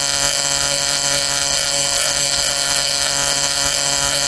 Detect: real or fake fake